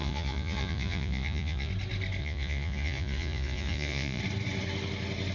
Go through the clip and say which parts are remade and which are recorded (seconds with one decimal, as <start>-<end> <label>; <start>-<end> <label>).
0.0-1.7 remade; 1.7-2.2 recorded; 2.2-4.2 remade; 4.2-5.3 recorded